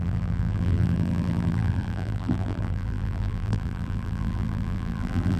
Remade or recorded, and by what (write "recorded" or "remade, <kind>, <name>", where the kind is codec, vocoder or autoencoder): remade, vocoder, BigVGAN v2